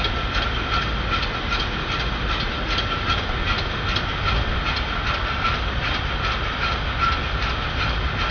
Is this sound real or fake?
real